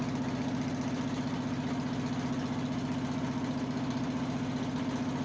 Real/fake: real